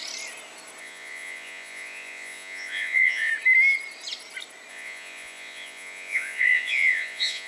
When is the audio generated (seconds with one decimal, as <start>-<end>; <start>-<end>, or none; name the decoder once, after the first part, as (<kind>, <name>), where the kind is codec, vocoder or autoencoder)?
0.8-3.3 (vocoder, Vocos); 4.7-7.5